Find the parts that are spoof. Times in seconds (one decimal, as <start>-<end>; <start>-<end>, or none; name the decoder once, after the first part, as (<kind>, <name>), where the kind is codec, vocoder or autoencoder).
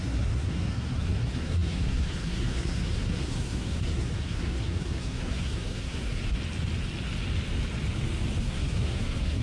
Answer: 0.0-6.2 (codec, SNAC); 8.4-9.4